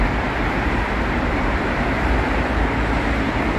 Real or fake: fake